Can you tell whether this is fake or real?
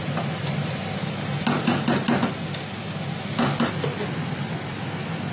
real